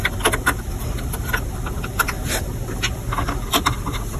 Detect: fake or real fake